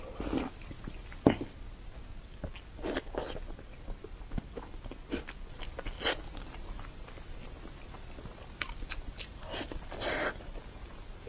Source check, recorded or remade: recorded